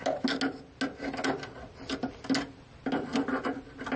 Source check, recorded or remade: recorded